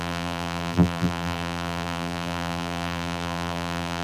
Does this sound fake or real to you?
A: fake